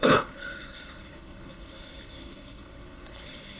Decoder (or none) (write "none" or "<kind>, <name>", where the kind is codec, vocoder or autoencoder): codec, HILCodec